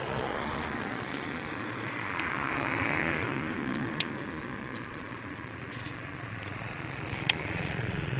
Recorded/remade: remade